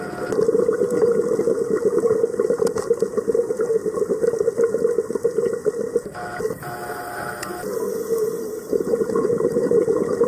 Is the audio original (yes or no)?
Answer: yes